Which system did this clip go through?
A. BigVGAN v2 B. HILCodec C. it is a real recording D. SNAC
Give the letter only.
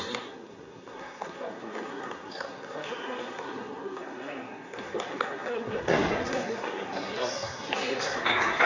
D